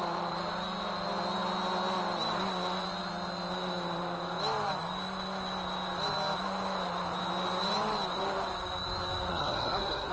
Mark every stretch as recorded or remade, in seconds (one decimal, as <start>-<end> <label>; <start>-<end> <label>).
0.0-9.3 recorded; 9.3-10.1 remade